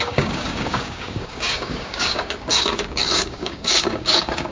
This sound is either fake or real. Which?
fake